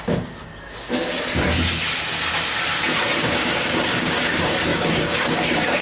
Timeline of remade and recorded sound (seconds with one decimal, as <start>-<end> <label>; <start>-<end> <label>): 0.0-0.5 remade; 0.5-3.2 recorded; 3.2-5.8 remade